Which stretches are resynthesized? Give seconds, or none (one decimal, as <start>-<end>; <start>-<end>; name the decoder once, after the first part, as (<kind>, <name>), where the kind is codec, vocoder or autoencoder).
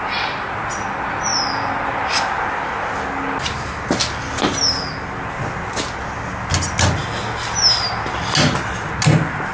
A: none